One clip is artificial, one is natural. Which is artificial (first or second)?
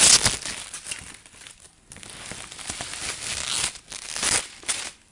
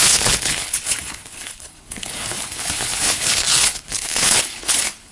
second